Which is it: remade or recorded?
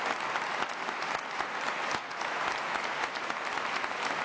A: recorded